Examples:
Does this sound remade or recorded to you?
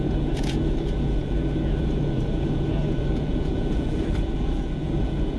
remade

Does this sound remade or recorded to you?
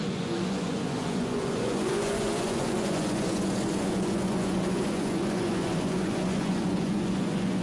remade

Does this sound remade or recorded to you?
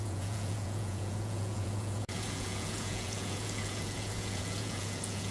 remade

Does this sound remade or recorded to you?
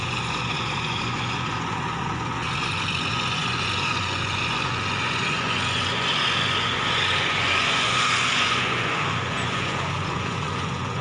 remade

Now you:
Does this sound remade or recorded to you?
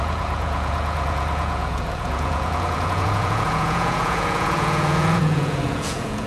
remade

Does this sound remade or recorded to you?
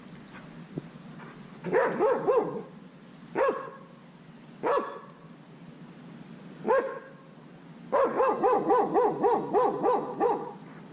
recorded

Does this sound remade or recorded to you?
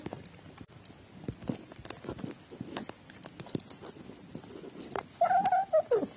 recorded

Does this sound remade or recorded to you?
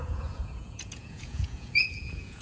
remade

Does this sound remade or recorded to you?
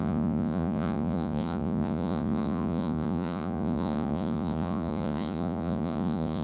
remade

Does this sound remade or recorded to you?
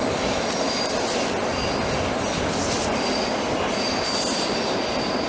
recorded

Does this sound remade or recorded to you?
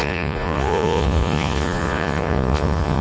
remade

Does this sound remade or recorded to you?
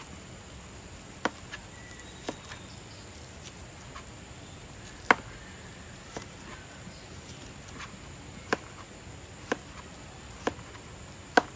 recorded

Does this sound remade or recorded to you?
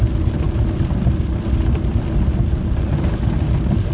recorded